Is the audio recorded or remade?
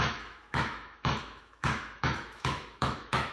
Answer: remade